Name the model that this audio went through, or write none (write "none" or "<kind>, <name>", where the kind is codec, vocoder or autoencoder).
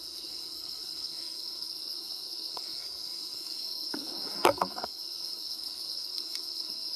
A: codec, SNAC